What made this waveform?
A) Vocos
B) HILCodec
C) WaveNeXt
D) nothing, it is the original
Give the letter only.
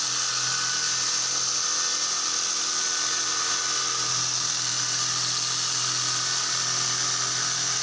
D